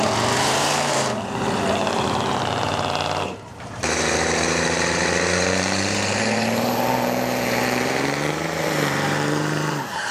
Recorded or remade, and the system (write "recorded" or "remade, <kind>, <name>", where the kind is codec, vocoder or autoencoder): remade, vocoder, BigVGAN v2